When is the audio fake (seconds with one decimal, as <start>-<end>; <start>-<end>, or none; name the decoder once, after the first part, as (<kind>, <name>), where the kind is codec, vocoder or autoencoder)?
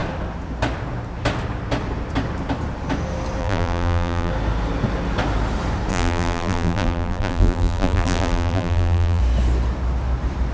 3.4-4.3 (vocoder, BigVGAN v2); 5.9-9.2